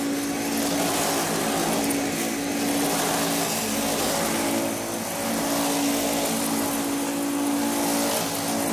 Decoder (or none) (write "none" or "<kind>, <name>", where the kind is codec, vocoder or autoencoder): none